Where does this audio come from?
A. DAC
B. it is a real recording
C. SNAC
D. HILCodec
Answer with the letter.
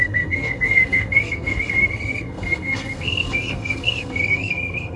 C